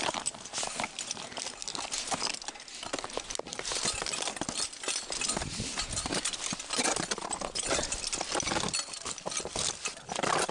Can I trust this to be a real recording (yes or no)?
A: yes